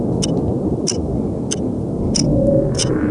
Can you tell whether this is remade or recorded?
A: recorded